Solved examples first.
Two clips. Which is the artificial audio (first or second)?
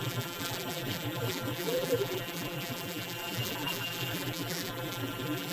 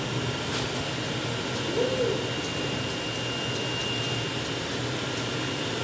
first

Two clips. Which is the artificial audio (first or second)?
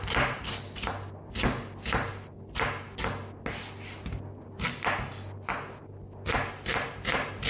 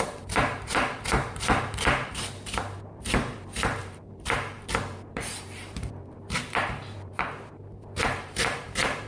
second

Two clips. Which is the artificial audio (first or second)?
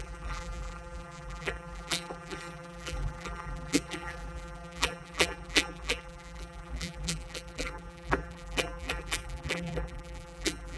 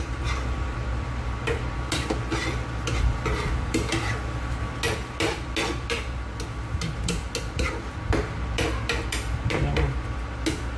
first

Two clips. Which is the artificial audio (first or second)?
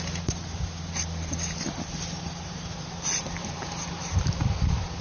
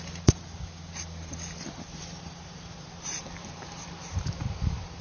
first